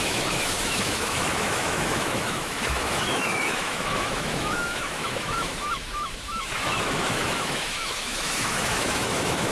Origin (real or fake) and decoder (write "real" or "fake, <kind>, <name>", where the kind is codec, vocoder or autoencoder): fake, autoencoder, DAC-VAE